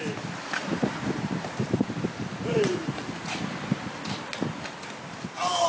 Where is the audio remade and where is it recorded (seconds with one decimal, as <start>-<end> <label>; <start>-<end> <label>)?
0.0-0.7 recorded; 0.7-3.7 remade; 3.7-5.7 recorded